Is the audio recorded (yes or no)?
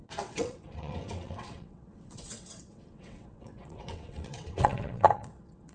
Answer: no